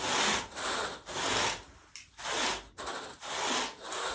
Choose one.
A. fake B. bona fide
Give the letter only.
B